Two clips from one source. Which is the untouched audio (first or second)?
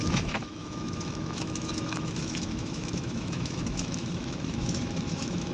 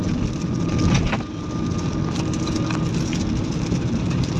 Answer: second